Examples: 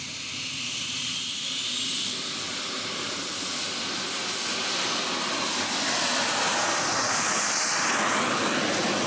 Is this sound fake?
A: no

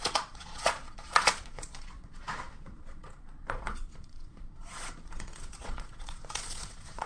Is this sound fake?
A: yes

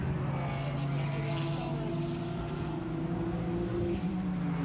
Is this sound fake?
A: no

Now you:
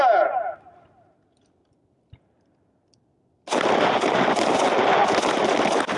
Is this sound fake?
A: no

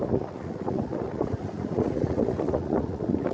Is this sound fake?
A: yes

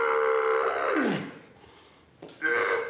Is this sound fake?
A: no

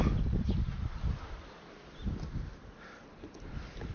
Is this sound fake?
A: no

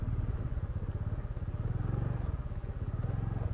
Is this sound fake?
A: no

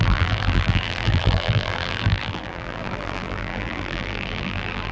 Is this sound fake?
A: yes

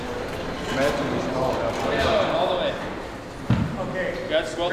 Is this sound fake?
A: no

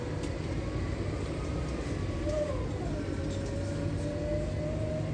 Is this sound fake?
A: no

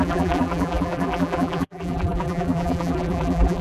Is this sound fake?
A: yes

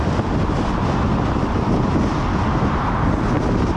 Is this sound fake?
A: no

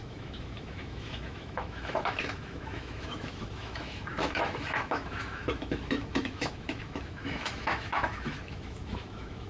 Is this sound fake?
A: yes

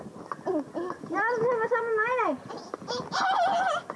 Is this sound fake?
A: no